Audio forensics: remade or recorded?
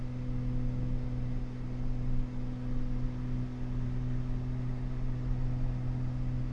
recorded